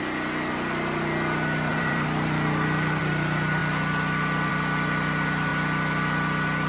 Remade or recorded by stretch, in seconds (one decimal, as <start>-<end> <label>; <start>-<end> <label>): 0.0-1.7 recorded; 1.7-3.0 remade; 3.0-6.7 recorded